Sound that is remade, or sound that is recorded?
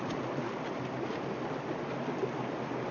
recorded